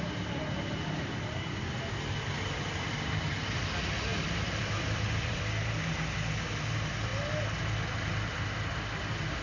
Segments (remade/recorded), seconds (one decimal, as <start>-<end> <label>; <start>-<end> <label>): 0.0-4.1 recorded; 4.1-5.4 remade; 5.4-9.4 recorded